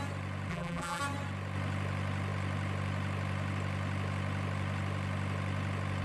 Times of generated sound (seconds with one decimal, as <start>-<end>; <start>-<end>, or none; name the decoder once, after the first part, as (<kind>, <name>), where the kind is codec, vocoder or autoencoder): 0.5-1.0 (vocoder, BigVGAN v2)